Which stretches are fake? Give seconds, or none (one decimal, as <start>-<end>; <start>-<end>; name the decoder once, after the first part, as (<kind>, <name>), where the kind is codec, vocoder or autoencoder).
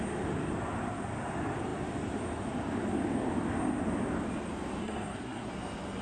4.8-5.5 (codec, SNAC)